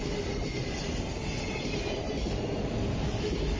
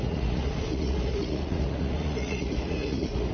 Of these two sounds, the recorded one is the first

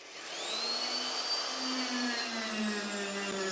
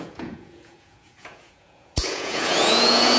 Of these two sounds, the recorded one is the first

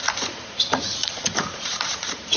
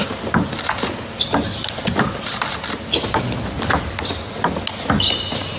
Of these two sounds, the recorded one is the second